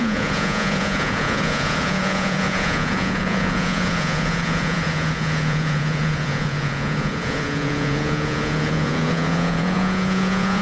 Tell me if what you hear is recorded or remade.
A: remade